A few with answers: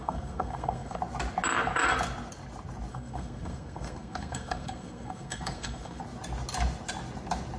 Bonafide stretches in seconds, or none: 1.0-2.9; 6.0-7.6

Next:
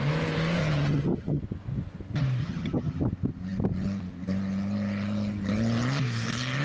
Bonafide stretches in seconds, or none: 0.0-0.6; 1.4-2.4; 3.0-6.6

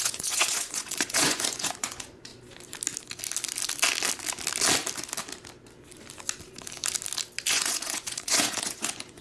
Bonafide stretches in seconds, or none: 2.3-7.5

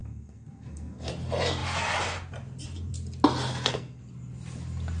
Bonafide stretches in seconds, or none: 1.1-3.5; 4.0-5.0

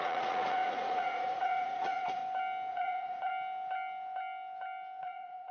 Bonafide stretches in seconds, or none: 2.2-2.7; 3.3-5.0

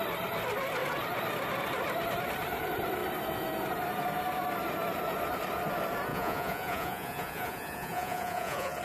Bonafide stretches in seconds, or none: 0.0-6.1

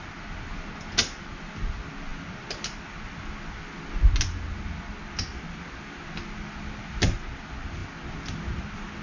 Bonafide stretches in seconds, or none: 0.0-9.0

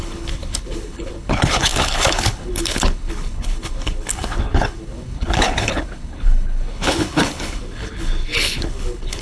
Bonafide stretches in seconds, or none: none